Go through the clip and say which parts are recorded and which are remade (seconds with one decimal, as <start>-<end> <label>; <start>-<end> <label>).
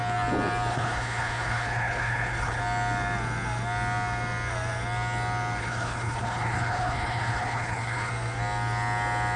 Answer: 0.0-0.7 recorded; 0.7-2.6 remade; 2.6-5.6 recorded; 5.6-8.1 remade; 8.1-9.4 recorded